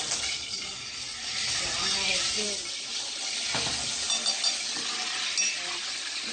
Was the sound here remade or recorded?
recorded